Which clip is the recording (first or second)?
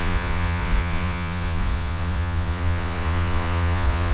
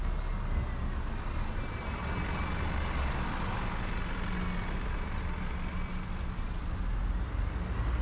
second